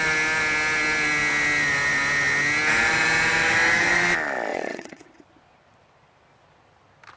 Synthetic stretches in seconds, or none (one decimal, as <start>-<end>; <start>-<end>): 4.5-5.1